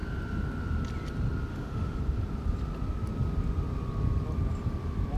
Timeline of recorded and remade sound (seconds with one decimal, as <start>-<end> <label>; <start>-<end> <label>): 0.0-1.5 recorded; 1.5-2.0 remade; 2.0-5.2 recorded